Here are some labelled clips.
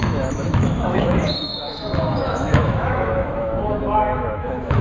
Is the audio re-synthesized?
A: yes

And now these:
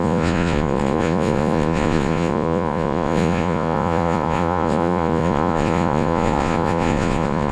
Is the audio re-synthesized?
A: yes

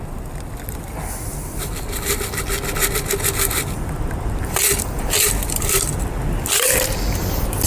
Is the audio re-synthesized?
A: no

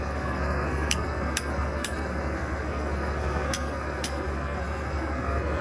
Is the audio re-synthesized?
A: yes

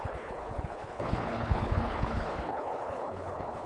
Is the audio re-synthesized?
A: yes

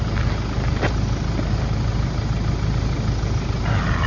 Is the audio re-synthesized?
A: no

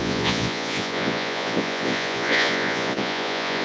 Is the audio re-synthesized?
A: yes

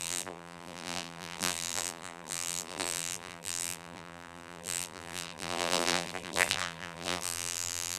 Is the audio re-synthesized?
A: yes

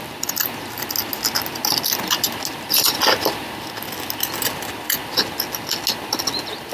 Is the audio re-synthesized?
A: no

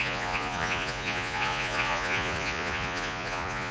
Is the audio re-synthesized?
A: yes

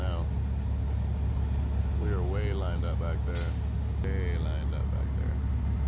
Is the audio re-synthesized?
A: no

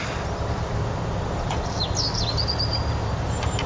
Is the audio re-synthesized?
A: no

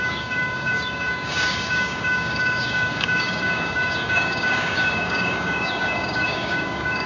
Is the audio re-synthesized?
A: yes